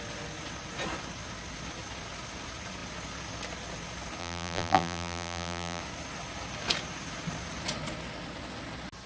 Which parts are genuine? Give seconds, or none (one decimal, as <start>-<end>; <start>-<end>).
0.0-4.2; 5.8-9.1

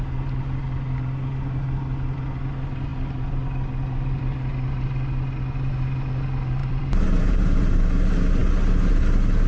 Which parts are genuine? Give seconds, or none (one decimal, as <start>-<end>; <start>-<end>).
0.0-6.6; 7.7-9.5

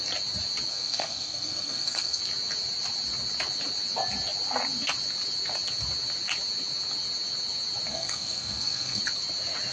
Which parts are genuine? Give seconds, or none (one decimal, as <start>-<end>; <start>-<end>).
0.0-0.7; 2.2-7.9; 9.0-9.7

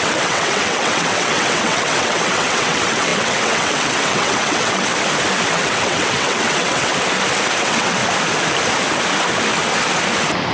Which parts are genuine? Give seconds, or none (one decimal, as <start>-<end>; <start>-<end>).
4.9-5.5; 6.9-7.6; 8.0-10.5

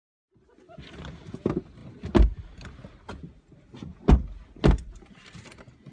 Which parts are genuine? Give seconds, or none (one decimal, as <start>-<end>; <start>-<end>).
0.0-5.9

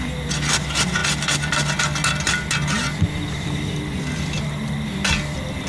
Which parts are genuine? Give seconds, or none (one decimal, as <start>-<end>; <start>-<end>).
0.0-5.7

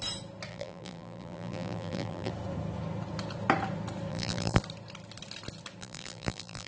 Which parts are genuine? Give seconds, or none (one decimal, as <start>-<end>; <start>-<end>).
0.0-0.5; 2.3-4.1; 4.6-5.8